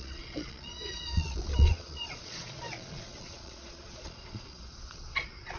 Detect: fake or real fake